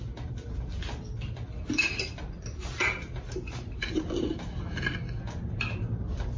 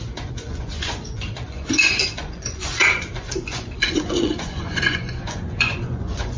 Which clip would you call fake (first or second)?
second